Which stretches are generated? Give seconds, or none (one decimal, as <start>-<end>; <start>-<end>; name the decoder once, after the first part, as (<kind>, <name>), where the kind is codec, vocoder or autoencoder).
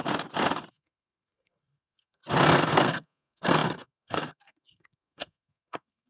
0.7-2.2 (codec, SNAC); 2.7-6.1